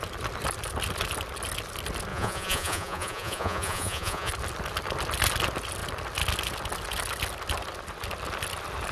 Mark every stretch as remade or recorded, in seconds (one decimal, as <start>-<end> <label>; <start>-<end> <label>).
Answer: 0.0-2.1 recorded; 2.1-4.3 remade; 4.3-8.9 recorded